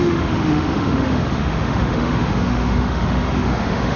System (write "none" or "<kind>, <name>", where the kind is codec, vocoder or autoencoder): autoencoder, DAC-VAE